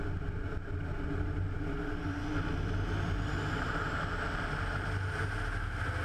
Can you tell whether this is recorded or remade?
recorded